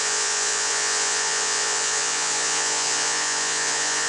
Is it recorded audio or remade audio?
remade